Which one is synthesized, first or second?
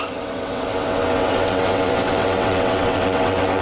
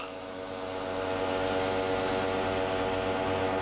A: first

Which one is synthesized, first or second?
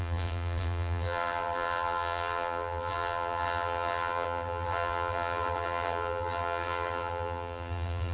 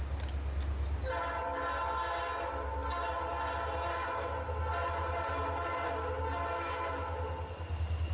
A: first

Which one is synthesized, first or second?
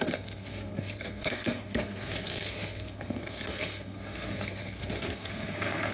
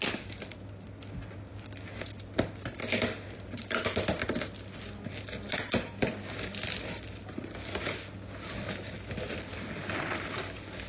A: first